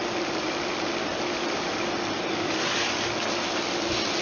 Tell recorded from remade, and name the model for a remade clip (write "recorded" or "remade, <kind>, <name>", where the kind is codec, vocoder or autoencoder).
remade, vocoder, BigVGAN v2